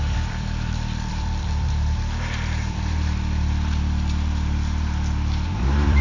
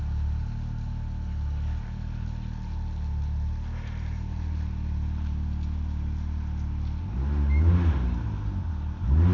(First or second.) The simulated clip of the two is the first